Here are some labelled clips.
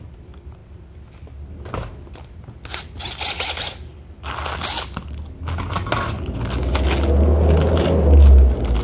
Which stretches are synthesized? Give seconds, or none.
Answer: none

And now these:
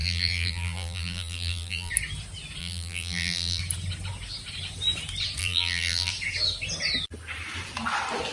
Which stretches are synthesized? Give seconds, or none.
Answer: 0.0-1.9 (vocoder, BigVGAN v2); 2.6-3.6; 5.4-6.1

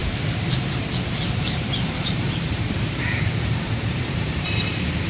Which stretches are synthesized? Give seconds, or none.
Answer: 0.0-5.1 (vocoder, BigVGAN v2)

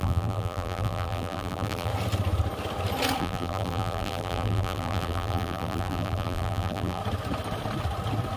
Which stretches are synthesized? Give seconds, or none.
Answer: 0.0-1.9 (vocoder, BigVGAN v2); 3.2-7.0

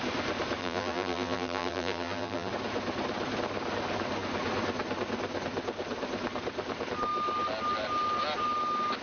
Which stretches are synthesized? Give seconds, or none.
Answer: 0.6-2.5 (vocoder, BigVGAN v2)

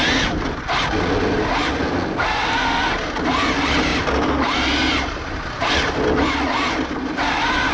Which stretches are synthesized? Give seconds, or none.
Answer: 3.9-5.7 (vocoder, BigVGAN v2)